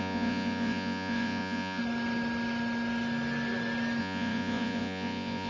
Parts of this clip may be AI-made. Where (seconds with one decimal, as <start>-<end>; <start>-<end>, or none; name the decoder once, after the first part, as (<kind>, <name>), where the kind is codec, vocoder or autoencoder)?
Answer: 0.0-1.8 (vocoder, Vocos); 4.0-5.5